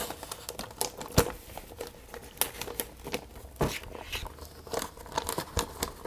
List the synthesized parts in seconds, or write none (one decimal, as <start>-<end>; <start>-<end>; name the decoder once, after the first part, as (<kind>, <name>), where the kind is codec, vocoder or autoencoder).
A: none